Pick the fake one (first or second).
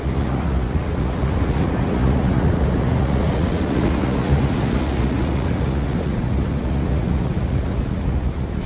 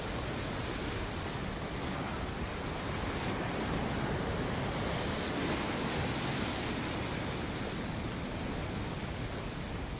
first